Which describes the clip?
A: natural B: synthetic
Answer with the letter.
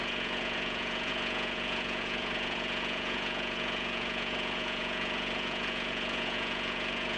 B